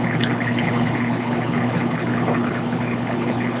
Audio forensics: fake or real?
fake